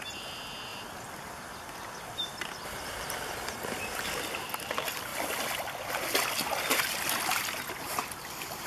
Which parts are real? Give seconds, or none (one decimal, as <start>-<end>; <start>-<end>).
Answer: 0.0-0.7; 3.6-8.7